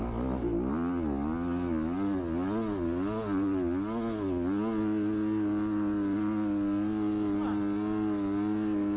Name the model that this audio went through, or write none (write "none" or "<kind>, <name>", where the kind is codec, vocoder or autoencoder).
none